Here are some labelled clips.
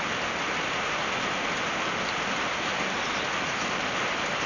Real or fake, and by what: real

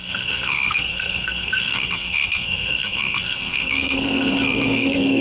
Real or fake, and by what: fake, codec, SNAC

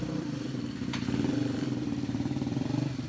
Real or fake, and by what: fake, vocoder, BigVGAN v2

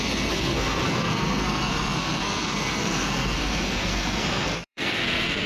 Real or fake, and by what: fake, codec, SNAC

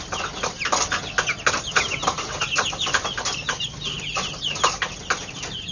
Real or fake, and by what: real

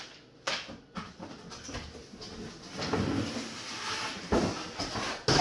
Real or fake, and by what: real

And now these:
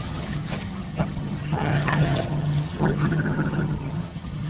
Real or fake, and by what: fake, vocoder, HiFi-GAN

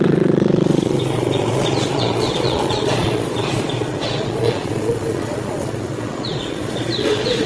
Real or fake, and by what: fake, vocoder, Vocos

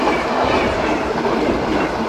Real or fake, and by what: real